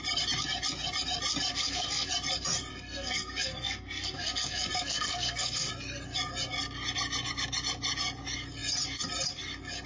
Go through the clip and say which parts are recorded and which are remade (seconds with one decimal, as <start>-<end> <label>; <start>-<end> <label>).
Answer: 0.0-1.5 recorded; 1.5-2.1 remade; 2.1-2.7 recorded; 2.7-5.7 remade; 5.7-9.9 recorded